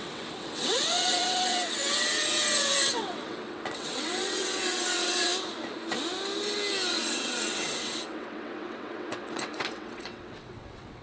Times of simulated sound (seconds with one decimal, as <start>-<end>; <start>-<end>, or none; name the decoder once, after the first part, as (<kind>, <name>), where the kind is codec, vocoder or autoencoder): 0.0-5.3 (vocoder, WaveNeXt); 6.9-11.0